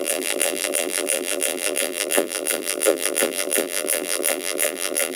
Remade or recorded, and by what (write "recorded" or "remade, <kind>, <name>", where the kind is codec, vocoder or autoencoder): remade, vocoder, BigVGAN v2